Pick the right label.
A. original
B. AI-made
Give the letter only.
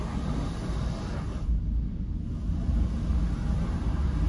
A